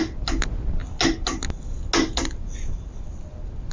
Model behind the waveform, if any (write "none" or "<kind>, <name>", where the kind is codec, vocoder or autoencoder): none